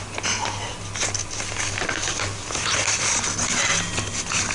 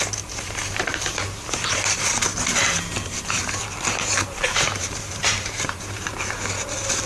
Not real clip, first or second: second